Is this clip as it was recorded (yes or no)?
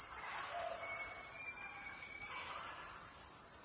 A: no